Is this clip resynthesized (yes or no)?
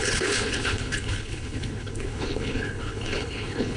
yes